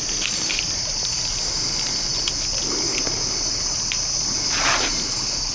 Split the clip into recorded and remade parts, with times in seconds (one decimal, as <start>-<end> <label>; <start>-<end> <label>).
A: 0.0-5.5 recorded